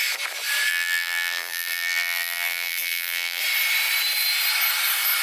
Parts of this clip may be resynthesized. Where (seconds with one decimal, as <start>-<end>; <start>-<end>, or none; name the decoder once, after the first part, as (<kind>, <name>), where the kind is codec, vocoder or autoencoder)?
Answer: 0.7-3.4 (vocoder, BigVGAN v2)